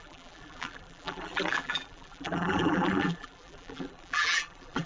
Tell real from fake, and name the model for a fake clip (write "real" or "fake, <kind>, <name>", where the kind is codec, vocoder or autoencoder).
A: fake, vocoder, BigVGAN v2